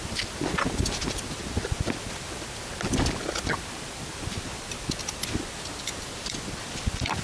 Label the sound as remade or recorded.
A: recorded